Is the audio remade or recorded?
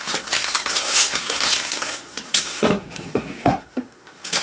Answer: remade